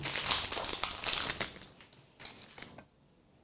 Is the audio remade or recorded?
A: recorded